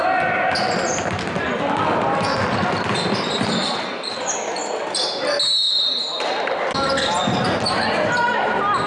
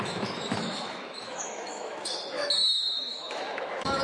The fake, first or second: second